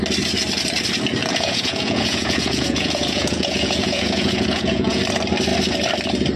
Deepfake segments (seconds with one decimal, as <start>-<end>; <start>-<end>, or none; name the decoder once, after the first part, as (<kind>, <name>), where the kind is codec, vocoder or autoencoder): 1.2-5.0 (vocoder, Vocos)